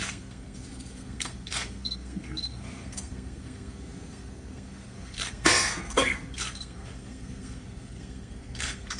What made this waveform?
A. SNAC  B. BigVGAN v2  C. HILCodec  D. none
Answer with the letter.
A